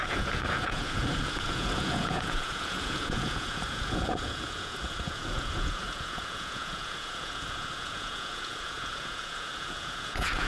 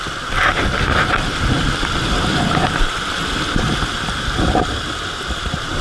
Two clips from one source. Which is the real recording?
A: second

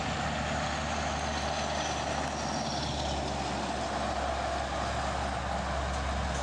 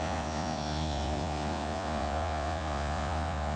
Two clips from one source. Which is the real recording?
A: first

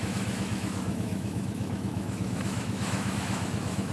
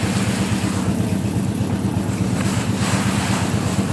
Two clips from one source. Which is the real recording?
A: second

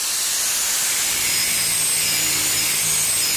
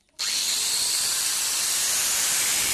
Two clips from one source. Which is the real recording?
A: first